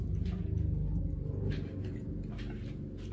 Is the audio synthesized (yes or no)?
no